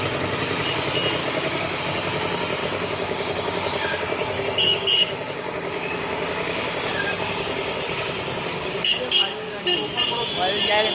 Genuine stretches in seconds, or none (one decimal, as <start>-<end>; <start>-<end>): 0.0-1.2; 1.8-2.6; 7.8-8.5; 9.6-10.9